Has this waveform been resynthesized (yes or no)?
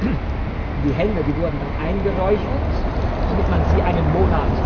no